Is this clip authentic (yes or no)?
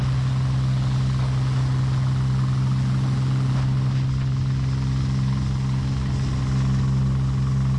yes